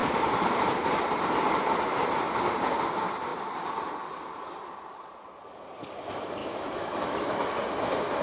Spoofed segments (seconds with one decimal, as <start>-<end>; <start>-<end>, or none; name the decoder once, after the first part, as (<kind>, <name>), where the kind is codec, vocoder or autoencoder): 6.4-7.6 (autoencoder, DAC-VAE)

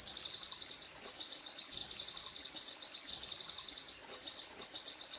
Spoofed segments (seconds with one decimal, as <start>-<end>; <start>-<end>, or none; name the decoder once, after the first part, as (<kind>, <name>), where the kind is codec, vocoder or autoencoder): none

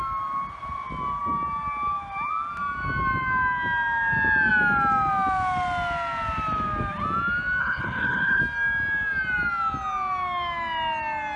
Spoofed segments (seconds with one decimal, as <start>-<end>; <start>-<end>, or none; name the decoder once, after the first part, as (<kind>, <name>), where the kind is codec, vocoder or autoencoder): 7.6-8.4 (codec, HILCodec)

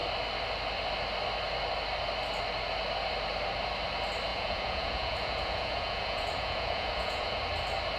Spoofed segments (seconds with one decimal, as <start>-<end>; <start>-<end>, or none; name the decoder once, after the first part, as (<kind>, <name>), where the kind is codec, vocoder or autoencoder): 4.3-7.4 (vocoder, Vocos)